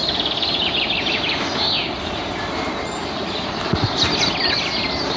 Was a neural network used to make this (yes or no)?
no